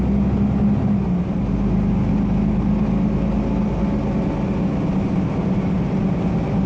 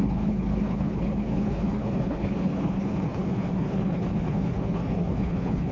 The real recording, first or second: first